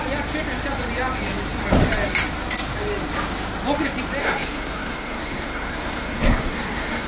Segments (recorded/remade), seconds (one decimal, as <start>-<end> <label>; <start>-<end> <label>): 0.0-4.2 recorded; 4.2-7.1 remade